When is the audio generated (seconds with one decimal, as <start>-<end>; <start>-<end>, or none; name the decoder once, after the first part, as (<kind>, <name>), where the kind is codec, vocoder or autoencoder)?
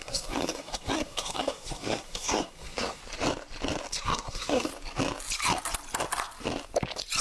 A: 0.0-3.0 (codec, SNAC); 3.9-4.7